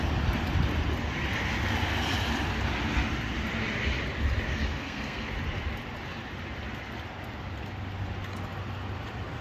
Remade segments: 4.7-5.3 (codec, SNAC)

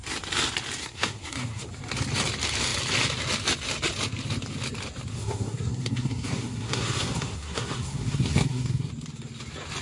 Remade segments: 0.8-1.7 (codec, SNAC); 5.1-8.9

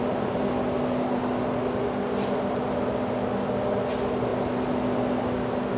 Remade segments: none

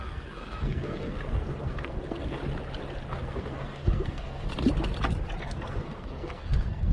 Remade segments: 0.0-2.4 (codec, SNAC); 3.1-4.5; 5.4-6.9

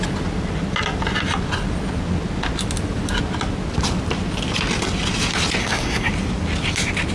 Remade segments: 5.6-6.1 (codec, SNAC)

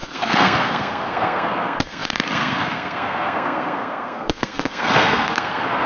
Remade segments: 0.0-5.9 (codec, SNAC)

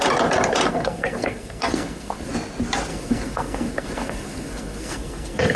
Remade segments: 0.7-2.3 (codec, SNAC); 2.9-5.6